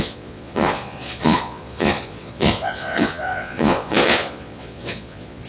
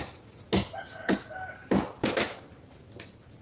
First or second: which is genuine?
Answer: second